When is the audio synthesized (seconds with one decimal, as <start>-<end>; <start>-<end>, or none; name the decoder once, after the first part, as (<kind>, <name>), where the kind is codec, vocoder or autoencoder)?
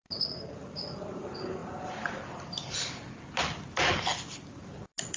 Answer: none